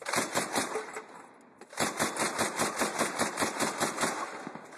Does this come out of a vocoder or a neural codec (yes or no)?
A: no